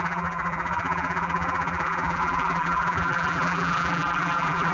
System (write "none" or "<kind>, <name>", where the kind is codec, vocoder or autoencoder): vocoder, BigVGAN v2